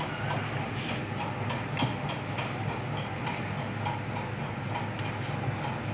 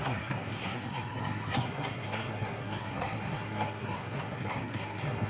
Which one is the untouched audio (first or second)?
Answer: first